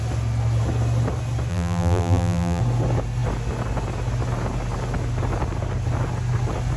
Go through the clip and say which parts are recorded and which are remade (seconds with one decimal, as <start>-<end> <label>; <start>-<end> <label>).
0.0-1.5 recorded; 1.5-2.6 remade; 2.6-6.8 recorded